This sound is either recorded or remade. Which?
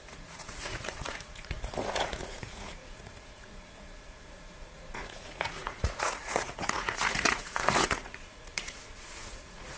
remade